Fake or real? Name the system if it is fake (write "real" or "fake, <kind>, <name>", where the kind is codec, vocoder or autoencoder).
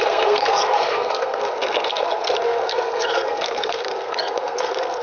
fake, codec, SNAC